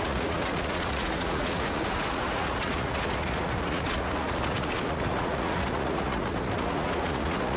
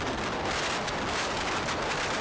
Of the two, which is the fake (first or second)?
first